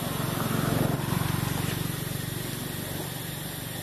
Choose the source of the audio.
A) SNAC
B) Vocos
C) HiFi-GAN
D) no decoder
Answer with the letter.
D